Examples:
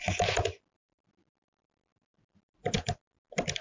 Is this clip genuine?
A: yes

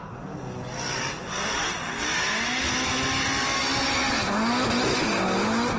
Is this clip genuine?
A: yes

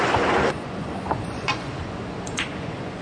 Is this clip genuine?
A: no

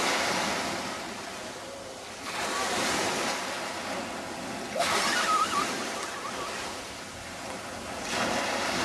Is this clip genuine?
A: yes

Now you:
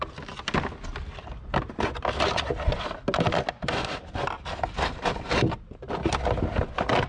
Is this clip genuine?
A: yes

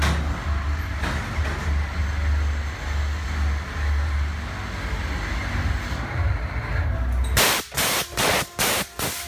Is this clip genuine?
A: yes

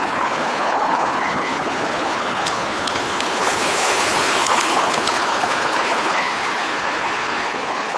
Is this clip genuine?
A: no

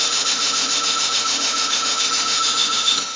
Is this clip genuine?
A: no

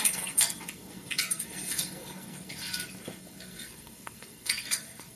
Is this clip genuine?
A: no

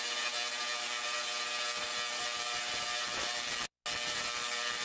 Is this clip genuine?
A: yes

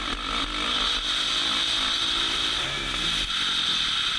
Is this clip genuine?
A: yes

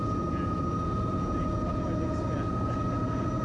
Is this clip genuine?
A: yes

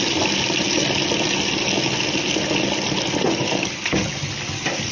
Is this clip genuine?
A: yes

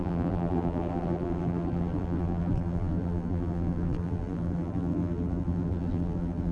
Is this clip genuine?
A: no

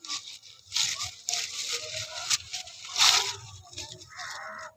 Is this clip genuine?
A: yes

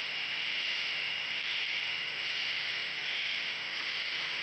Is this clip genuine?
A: no